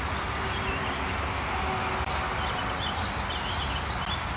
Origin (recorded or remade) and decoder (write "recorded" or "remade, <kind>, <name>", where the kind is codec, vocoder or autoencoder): recorded